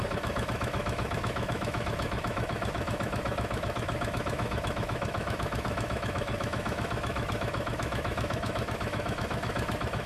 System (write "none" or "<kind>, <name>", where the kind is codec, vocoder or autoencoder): autoencoder, DAC-VAE